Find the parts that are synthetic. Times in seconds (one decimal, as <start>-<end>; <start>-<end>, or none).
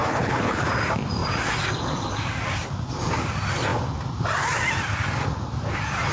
0.0-0.7